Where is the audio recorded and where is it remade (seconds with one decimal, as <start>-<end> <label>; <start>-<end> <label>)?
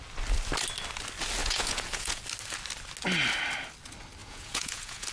0.0-1.4 recorded; 1.4-2.2 remade; 2.2-4.2 recorded; 4.2-5.1 remade